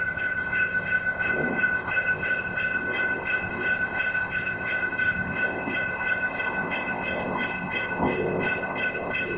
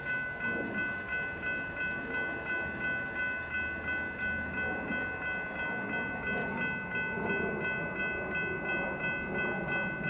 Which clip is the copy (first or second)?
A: first